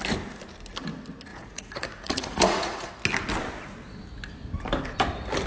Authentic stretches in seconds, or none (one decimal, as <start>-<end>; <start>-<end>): 0.0-1.3; 2.9-5.5